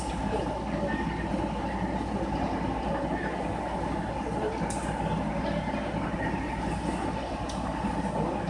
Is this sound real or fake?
real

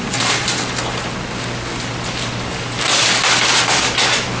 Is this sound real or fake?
real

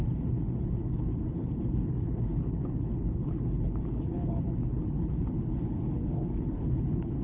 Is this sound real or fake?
fake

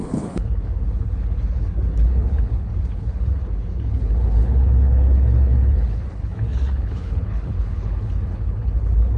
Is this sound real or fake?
fake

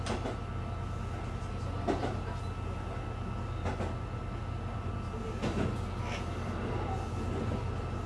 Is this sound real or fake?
real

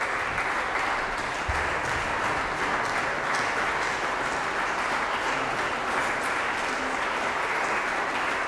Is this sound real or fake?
real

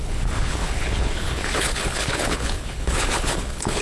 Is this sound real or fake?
fake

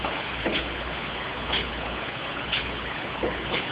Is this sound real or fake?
fake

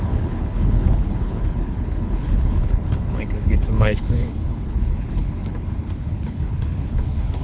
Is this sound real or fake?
fake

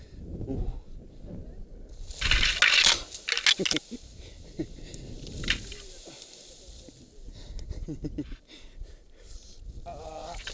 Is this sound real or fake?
real